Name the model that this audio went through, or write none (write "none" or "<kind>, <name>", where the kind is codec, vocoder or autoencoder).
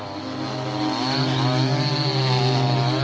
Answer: none